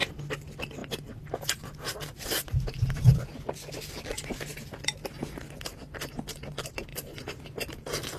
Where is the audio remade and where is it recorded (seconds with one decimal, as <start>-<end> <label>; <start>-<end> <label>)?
0.0-6.9 recorded; 6.9-7.7 remade; 7.7-8.2 recorded